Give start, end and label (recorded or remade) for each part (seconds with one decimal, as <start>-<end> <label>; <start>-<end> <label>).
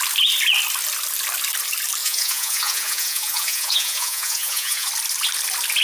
0.0-2.0 recorded; 2.0-4.9 remade; 4.9-5.8 recorded